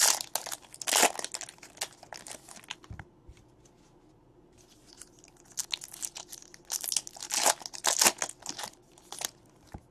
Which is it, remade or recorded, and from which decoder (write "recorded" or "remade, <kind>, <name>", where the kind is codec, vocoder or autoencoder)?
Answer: recorded